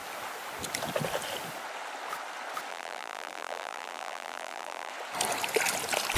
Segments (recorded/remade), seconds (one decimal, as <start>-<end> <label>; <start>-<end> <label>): 0.0-2.7 recorded; 2.7-4.9 remade; 4.9-6.2 recorded